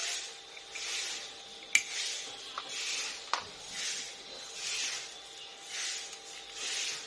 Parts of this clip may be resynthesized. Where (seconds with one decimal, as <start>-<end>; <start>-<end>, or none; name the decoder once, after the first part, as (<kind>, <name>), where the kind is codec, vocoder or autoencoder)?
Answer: none